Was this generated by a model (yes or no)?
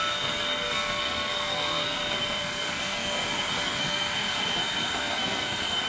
yes